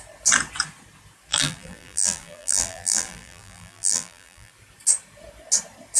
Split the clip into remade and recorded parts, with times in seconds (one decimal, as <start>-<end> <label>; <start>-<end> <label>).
0.0-1.3 recorded; 1.3-4.5 remade; 4.5-6.0 recorded